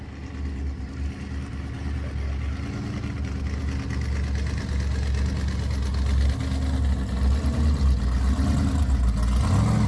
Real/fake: real